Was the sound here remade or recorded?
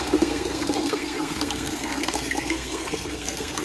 remade